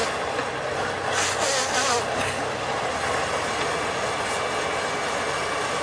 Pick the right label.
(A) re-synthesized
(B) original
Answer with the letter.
B